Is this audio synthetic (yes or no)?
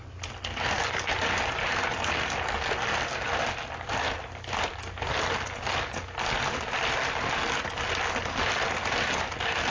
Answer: no